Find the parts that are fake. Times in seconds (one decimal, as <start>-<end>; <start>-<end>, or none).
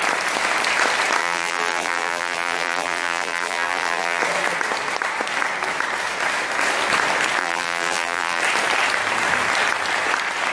1.2-4.2; 7.4-8.4